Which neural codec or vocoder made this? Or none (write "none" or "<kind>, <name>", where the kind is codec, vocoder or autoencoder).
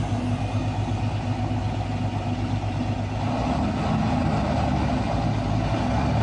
none